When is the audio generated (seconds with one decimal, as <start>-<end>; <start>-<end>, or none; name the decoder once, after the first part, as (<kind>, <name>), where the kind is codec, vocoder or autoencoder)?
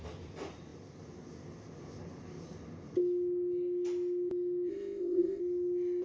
4.7-5.4 (codec, ZipCodec)